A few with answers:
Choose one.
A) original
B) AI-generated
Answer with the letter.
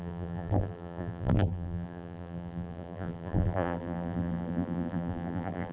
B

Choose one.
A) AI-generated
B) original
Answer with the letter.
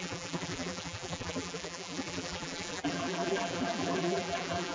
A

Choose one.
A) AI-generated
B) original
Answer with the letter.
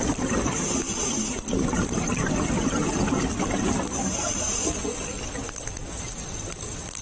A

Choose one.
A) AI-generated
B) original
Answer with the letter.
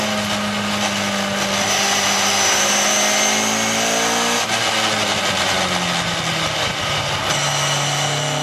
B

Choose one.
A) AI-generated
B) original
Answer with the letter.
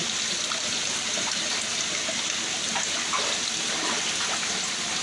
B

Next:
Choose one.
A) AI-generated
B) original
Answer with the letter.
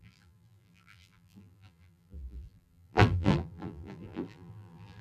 A